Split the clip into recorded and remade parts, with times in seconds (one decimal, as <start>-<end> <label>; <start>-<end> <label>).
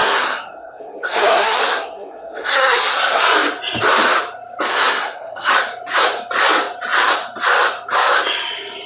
0.0-3.2 remade; 3.2-4.7 recorded; 4.7-5.5 remade; 5.5-8.9 recorded